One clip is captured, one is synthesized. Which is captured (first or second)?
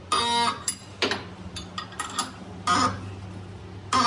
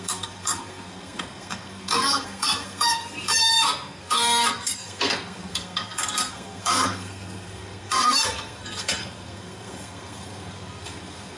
first